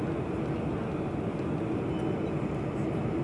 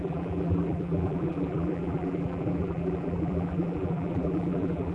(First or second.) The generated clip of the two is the second